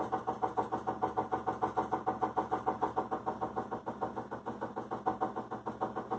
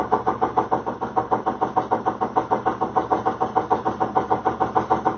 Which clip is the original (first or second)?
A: first